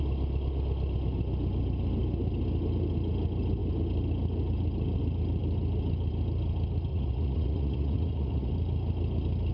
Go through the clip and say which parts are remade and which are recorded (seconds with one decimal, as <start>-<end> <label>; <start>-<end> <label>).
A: 0.0-6.9 recorded; 6.9-8.5 remade; 8.5-9.5 recorded